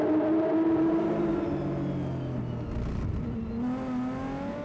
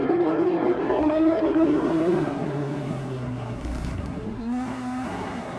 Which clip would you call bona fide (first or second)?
first